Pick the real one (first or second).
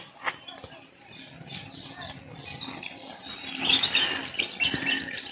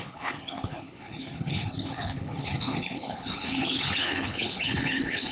first